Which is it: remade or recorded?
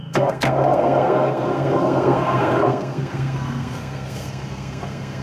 remade